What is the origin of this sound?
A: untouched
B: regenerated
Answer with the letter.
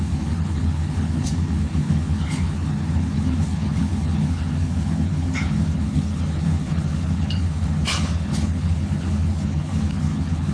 B